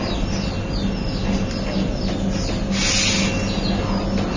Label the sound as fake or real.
real